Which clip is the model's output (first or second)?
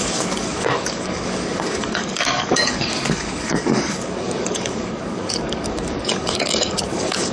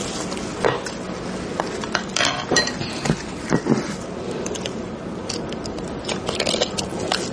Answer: first